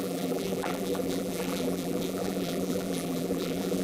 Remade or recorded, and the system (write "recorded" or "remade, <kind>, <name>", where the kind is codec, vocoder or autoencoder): remade, vocoder, BigVGAN v2